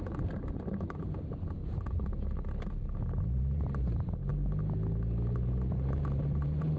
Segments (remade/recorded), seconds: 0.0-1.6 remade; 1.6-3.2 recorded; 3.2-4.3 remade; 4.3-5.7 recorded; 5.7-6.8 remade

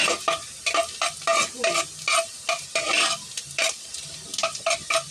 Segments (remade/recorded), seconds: 0.0-0.8 remade; 0.8-2.5 recorded; 2.5-5.1 remade

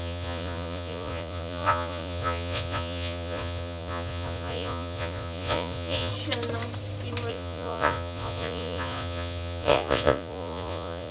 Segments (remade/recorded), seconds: 0.0-6.1 remade; 6.1-7.3 recorded; 7.3-11.1 remade

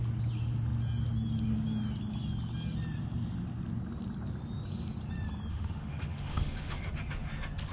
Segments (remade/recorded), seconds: 0.0-5.5 recorded; 5.5-6.9 remade; 6.9-7.7 recorded